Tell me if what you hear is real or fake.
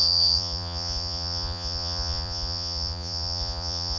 fake